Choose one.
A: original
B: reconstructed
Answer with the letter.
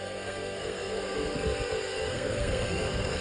B